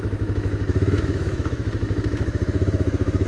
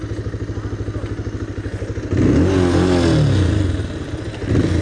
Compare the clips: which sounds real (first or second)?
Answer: second